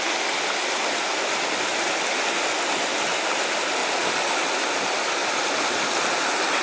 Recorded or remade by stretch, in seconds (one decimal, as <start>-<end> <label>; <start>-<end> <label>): 0.0-6.6 recorded